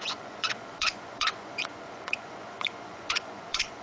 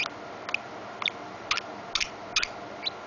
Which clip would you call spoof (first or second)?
first